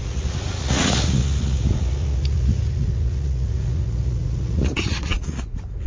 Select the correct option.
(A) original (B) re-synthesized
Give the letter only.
B